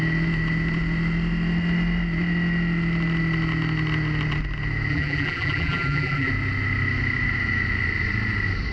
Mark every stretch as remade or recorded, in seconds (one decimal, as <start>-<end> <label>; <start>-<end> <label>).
0.0-4.9 recorded; 4.9-6.3 remade; 6.3-8.7 recorded